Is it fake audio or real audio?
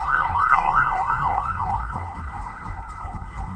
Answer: fake